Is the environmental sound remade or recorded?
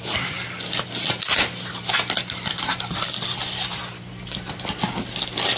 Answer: recorded